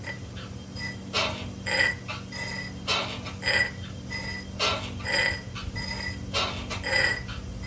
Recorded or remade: recorded